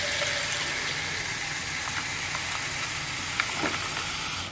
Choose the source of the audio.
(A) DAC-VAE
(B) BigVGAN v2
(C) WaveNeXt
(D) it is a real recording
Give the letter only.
D